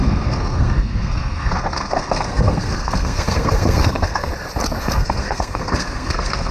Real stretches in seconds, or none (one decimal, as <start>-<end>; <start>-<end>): 4.3-4.8